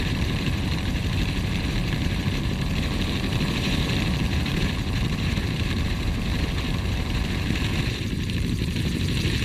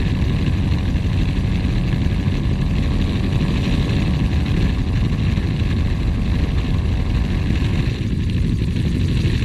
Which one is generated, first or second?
first